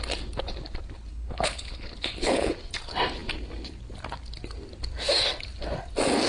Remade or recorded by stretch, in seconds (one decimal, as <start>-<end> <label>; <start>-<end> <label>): 0.0-1.1 recorded; 1.1-2.5 remade; 2.5-6.3 recorded